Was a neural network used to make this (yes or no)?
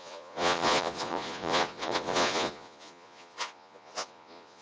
yes